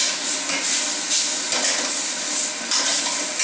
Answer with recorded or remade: recorded